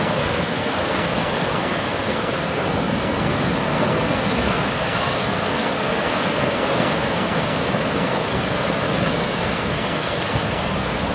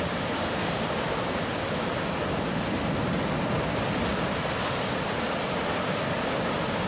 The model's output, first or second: first